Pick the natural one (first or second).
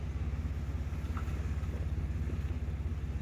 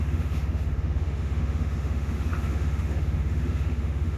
first